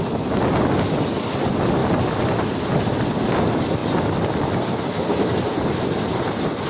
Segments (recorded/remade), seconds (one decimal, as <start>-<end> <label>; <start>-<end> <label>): 0.0-6.7 recorded